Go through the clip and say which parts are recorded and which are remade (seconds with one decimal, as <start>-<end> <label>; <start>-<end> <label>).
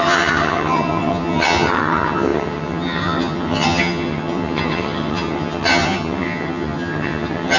0.0-7.6 remade